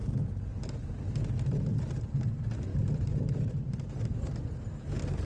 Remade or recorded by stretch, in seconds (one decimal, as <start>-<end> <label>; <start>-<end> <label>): 0.0-1.2 remade; 1.2-2.7 recorded; 2.7-4.3 remade; 4.3-5.2 recorded

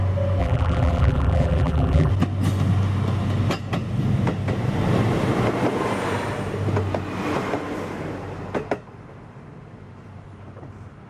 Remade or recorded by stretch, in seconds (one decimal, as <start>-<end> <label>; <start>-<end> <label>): 0.0-0.4 recorded; 0.4-2.1 remade; 2.1-11.1 recorded

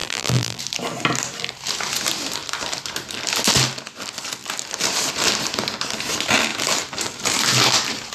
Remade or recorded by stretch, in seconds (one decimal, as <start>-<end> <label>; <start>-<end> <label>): 0.0-0.6 remade; 0.6-8.1 recorded

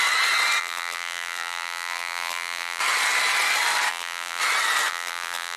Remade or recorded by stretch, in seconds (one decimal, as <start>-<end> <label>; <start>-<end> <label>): 0.0-0.6 recorded; 0.6-2.8 remade; 2.8-3.9 recorded; 3.9-4.4 remade; 4.4-4.9 recorded; 4.9-5.6 remade